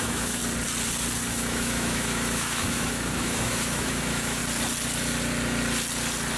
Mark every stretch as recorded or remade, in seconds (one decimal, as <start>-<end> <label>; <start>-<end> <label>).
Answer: 0.0-0.4 remade; 0.4-1.3 recorded; 1.3-4.4 remade; 4.4-6.4 recorded